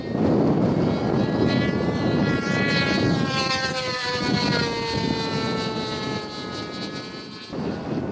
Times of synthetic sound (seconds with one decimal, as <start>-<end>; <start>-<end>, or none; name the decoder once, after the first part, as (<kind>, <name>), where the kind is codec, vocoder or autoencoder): 2.2-4.2 (vocoder, BigVGAN v2)